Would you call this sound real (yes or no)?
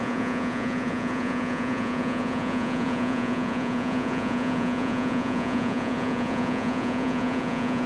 no